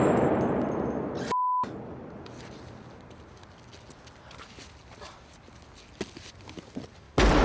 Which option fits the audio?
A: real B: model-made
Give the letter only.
A